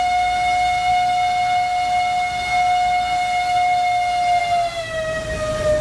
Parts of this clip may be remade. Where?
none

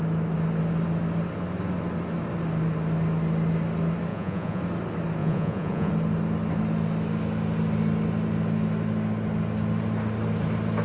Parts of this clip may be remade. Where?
4.1-4.6 (vocoder, Vocos); 5.2-5.9

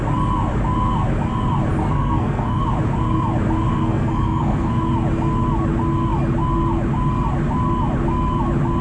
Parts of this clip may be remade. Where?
1.8-2.6 (codec, SNAC); 3.7-4.7

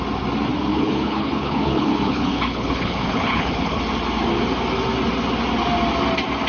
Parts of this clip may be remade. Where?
0.7-3.8 (codec, HILCodec)

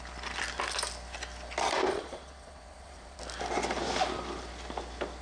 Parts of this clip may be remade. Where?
1.9-3.2 (vocoder, Vocos)

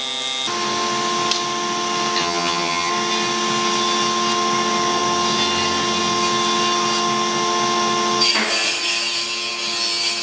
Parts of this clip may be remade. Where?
2.2-2.9 (vocoder, HiFi-GAN)